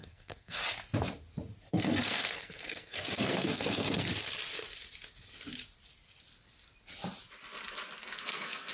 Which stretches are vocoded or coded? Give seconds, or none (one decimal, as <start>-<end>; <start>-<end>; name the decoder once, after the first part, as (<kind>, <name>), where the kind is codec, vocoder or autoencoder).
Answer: 0.0-0.6 (codec, SNAC); 1.7-4.1; 8.0-8.7